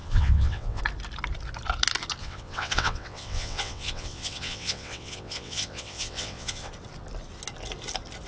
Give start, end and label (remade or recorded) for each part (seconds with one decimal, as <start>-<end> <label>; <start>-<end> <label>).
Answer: 0.0-0.8 remade; 0.8-2.2 recorded; 2.2-6.7 remade; 6.7-8.3 recorded